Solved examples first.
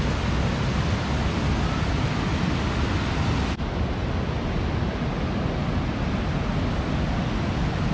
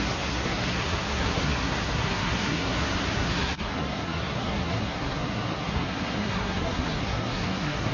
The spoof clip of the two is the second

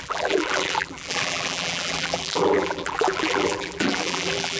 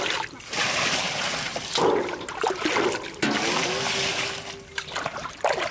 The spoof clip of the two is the first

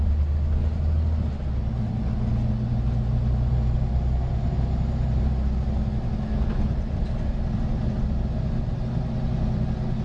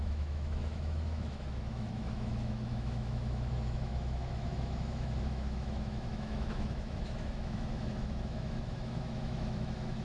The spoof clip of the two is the second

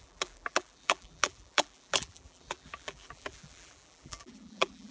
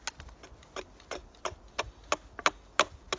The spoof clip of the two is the first